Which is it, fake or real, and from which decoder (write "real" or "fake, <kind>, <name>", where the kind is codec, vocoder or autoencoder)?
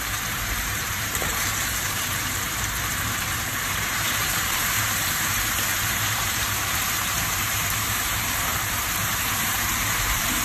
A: fake, vocoder, BigVGAN v2